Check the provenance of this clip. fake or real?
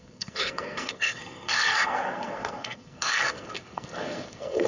fake